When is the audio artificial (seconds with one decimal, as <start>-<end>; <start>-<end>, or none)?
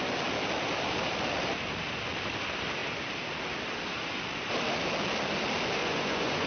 5.8-6.5